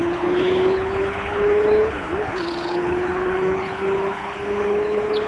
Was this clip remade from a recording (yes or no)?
yes